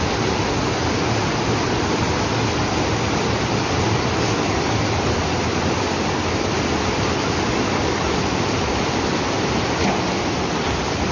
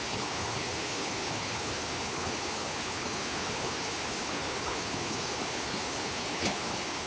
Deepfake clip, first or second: second